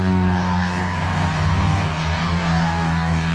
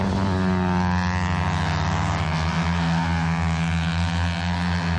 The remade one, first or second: first